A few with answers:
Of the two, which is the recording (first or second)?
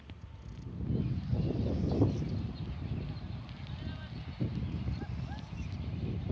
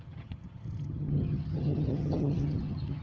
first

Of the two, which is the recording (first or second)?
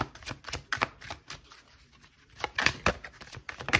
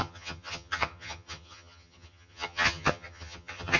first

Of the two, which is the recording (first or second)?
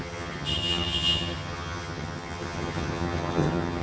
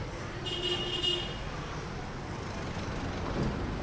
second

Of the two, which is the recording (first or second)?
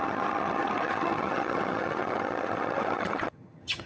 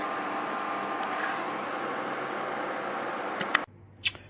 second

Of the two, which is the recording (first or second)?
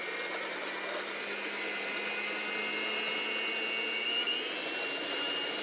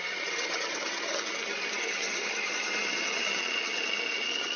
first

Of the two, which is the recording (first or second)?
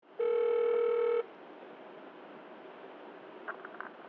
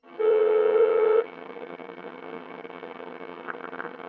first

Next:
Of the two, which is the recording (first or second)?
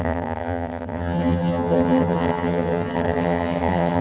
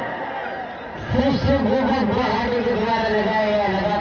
second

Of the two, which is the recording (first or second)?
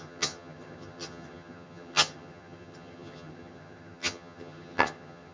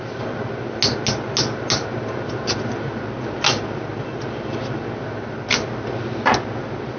second